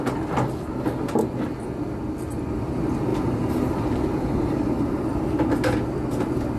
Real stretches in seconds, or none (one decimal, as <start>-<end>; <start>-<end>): 0.0-3.1; 5.2-6.6